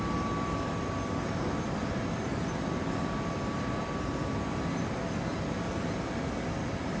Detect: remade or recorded recorded